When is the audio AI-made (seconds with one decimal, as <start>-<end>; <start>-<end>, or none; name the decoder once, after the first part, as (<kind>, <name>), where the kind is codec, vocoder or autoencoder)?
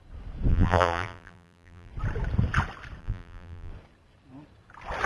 0.5-1.9 (vocoder, BigVGAN v2); 3.0-3.7